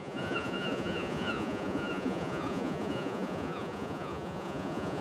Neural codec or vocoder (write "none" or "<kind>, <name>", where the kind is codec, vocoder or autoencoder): vocoder, Vocos